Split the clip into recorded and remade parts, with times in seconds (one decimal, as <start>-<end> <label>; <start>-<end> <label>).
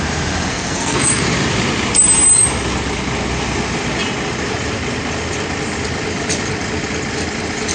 0.0-0.5 recorded; 0.5-1.2 remade; 1.2-7.7 recorded